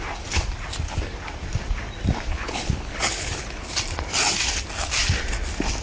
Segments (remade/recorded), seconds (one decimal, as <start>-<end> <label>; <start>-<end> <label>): 0.0-2.3 recorded; 2.3-3.7 remade; 3.7-5.8 recorded